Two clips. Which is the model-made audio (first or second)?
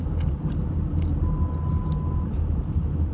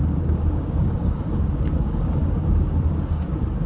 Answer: second